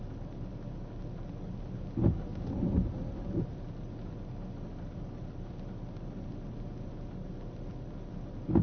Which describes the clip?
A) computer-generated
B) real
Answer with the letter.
B